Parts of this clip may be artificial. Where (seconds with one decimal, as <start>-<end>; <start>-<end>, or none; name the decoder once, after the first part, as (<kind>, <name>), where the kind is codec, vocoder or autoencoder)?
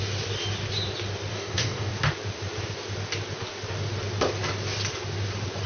1.3-1.9 (codec, DAC)